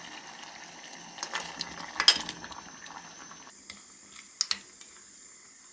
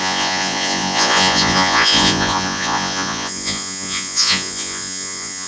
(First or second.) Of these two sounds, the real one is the first